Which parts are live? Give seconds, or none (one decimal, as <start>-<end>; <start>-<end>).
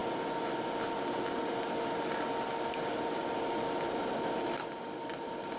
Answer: 0.0-5.6